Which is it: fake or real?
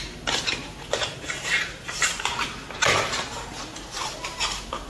fake